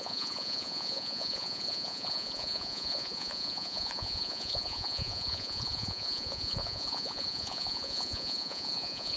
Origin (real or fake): fake